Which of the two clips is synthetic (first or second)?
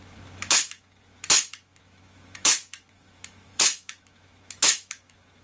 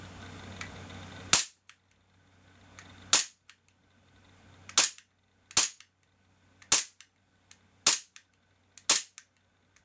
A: first